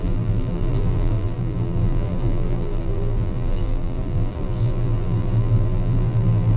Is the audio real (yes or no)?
no